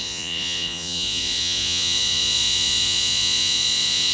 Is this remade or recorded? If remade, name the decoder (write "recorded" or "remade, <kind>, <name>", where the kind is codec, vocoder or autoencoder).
remade, vocoder, Vocos